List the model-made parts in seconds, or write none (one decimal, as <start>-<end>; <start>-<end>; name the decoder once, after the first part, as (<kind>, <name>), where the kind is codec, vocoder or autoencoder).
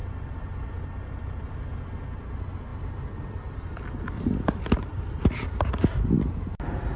2.7-3.7 (vocoder, BigVGAN v2)